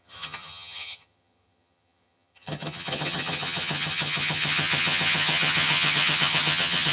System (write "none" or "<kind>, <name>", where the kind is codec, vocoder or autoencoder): vocoder, HiFi-GAN